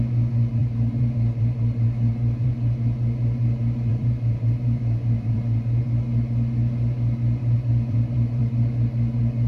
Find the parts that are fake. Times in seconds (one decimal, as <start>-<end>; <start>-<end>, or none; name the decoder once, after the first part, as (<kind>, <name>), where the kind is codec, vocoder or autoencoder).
0.6-2.5 (vocoder, BigVGAN v2); 3.9-5.8; 7.7-8.4